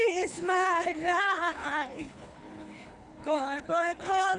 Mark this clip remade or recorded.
remade